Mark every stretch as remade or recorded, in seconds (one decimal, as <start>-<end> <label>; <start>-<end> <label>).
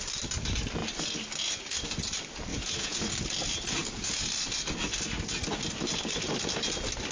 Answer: 0.0-2.5 recorded; 2.5-3.0 remade; 3.0-3.8 recorded; 3.8-4.3 remade; 4.3-7.1 recorded